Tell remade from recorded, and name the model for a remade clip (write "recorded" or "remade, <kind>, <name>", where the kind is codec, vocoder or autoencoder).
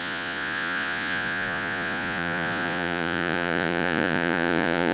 remade, vocoder, Vocos